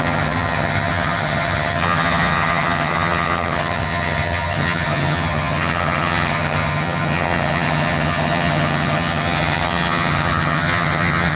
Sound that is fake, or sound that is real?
fake